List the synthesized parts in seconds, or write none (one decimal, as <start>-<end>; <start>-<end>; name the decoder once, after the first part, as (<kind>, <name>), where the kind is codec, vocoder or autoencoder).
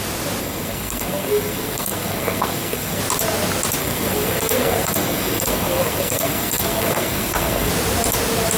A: 0.4-3.0 (codec, SNAC); 3.8-7.7